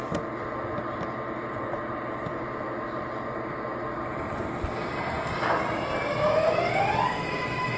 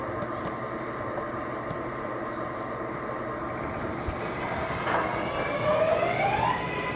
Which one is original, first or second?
first